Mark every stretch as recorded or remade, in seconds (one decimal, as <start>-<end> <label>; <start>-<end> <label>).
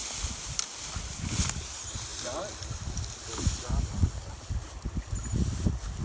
0.0-6.0 recorded